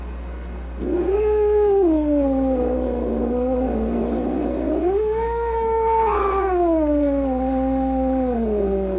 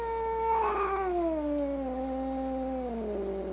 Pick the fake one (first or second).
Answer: first